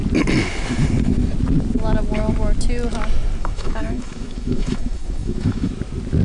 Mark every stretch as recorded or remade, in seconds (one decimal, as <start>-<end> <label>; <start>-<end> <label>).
0.0-3.4 recorded; 3.4-5.7 remade; 5.7-6.2 recorded